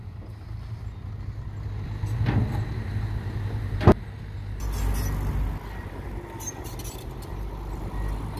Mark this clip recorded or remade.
recorded